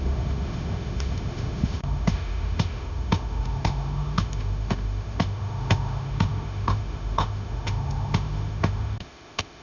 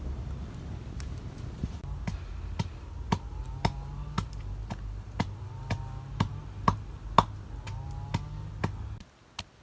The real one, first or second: second